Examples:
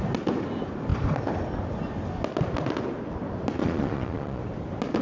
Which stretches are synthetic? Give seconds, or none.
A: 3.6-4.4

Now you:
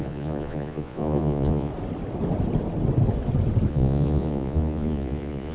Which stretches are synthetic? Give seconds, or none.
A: 0.0-1.7; 3.7-5.5

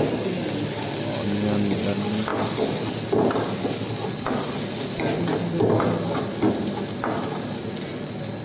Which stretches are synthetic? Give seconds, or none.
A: none

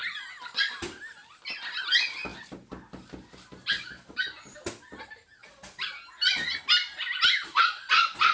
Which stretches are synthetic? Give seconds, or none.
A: none

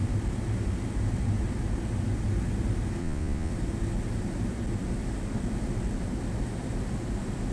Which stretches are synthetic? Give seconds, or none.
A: 3.0-3.5

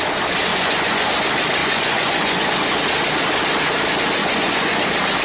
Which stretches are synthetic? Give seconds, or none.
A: 0.5-1.1; 1.6-2.4; 4.2-4.8

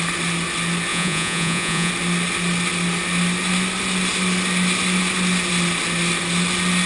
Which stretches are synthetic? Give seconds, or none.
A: 0.9-1.9

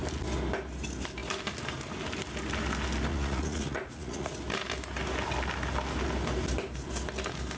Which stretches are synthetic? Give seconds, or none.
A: 3.1-4.3